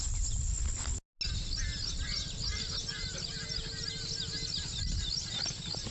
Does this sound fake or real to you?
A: real